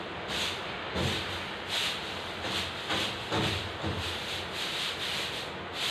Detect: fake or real real